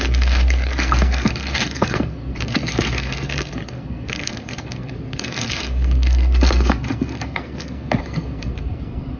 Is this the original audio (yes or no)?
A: no